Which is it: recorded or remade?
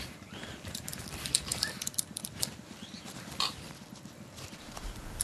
remade